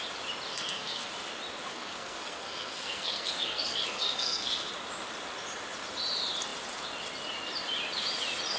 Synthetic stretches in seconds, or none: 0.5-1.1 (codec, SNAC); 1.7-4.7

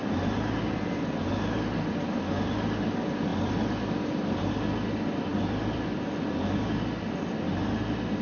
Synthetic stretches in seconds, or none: none

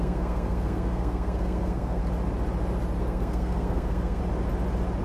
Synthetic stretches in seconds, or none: 0.0-2.0 (codec, SNAC); 3.0-4.2

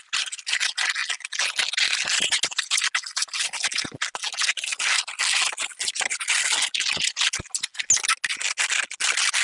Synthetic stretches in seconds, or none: none

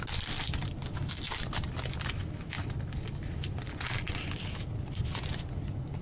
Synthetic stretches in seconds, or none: none

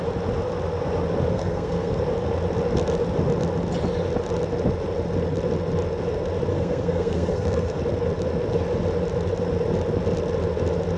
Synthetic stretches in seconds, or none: 1.3-2.0 (codec, SNAC); 6.5-7.8

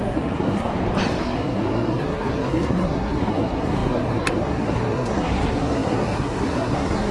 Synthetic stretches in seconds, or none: 0.0-0.7 (codec, SNAC); 1.2-7.1

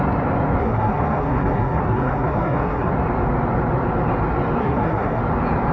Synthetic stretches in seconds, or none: 0.6-2.9 (codec, SNAC); 4.6-5.2